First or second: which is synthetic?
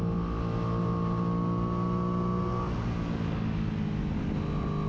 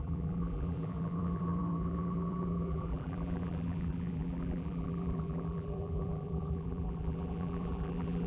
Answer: second